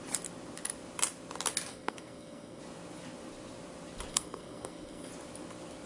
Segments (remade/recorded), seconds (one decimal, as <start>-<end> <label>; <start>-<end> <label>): 0.0-1.7 recorded; 1.7-2.6 remade; 2.6-4.1 recorded; 4.1-5.1 remade; 5.1-5.9 recorded